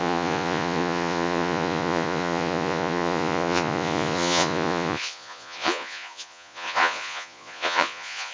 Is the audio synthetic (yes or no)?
yes